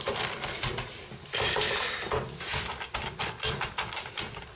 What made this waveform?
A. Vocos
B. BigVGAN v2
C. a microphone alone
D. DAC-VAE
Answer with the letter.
B